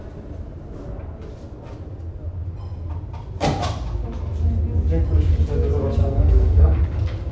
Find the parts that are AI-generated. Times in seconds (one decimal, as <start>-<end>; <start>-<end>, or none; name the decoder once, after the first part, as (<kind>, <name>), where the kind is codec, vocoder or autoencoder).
6.0-6.8 (codec, SNAC)